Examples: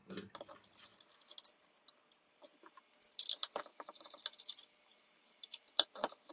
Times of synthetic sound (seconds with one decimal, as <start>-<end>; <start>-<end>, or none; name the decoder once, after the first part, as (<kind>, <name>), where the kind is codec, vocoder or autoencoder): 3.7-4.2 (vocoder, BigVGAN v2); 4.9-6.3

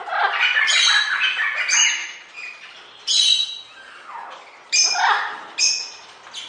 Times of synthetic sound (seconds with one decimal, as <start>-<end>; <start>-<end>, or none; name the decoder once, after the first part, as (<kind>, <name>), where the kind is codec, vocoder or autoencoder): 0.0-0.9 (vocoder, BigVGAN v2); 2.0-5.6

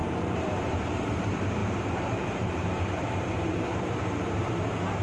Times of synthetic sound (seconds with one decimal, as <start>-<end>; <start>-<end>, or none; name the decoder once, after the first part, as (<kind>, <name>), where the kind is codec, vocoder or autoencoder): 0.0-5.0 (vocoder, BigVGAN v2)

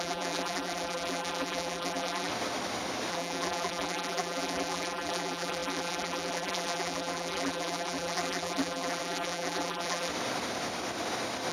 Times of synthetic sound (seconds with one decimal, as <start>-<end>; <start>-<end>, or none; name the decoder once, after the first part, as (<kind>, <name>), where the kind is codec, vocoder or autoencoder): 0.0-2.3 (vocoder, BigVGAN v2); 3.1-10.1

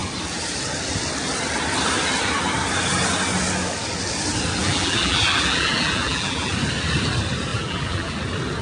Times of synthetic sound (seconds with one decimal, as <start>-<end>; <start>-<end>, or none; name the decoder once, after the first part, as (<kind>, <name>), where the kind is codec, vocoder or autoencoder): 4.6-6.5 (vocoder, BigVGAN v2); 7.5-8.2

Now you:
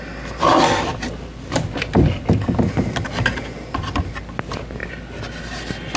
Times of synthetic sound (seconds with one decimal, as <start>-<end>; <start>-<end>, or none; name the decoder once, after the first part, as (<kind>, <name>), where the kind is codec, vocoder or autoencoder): 0.5-4.1 (vocoder, BigVGAN v2)

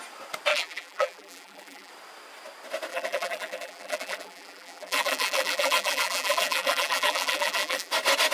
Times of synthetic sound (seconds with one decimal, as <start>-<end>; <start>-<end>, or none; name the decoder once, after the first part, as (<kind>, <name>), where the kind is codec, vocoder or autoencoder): 0.5-1.9 (vocoder, BigVGAN v2); 2.9-7.9